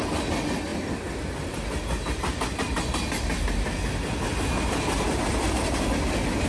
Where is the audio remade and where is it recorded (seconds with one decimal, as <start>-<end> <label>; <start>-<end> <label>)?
0.0-6.5 recorded